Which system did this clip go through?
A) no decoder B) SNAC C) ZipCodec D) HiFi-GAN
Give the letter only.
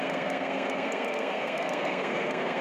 B